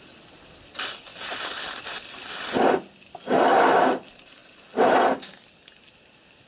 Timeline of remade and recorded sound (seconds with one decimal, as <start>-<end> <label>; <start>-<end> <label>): 0.0-6.5 recorded